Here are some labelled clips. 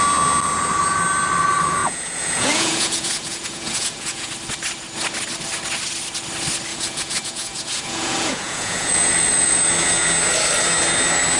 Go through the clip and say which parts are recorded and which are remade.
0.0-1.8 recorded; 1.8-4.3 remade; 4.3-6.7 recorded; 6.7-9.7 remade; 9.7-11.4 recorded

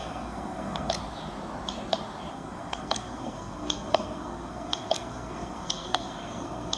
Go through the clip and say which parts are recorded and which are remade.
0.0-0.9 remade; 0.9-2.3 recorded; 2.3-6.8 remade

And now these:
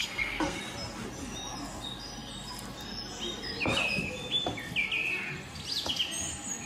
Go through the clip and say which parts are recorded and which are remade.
0.0-0.6 remade; 0.6-6.7 recorded

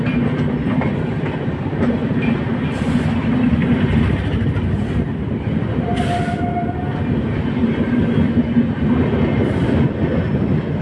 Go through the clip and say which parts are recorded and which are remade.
0.0-2.0 recorded; 2.0-2.5 remade; 2.5-3.6 recorded; 3.6-4.5 remade; 4.5-10.8 recorded